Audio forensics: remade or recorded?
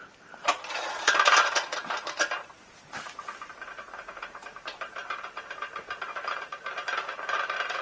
remade